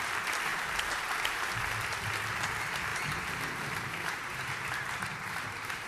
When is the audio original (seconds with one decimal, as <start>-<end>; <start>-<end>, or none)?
0.0-0.5; 1.6-2.9